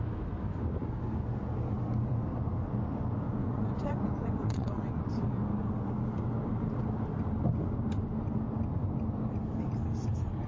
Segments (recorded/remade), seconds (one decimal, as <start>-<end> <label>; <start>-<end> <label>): 0.0-3.4 recorded; 3.4-5.0 remade; 5.0-10.5 recorded